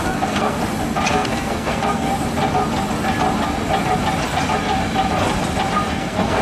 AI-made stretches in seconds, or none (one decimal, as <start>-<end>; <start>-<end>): 0.0-0.6; 1.1-2.1; 5.9-6.4